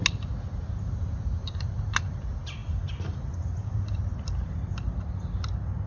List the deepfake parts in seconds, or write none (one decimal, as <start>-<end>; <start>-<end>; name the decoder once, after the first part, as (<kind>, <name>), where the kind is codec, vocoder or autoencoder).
1.0-1.9 (vocoder, BigVGAN v2)